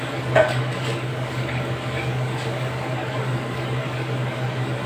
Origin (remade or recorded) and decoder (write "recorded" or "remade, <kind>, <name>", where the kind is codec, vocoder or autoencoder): remade, codec, DAC